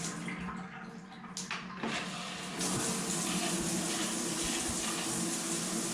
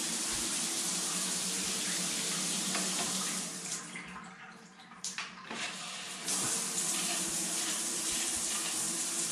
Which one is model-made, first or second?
second